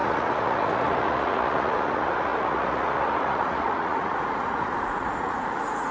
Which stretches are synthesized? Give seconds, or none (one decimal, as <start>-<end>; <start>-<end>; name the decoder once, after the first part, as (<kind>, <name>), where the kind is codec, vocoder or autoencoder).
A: 0.0-5.9 (vocoder, Vocos)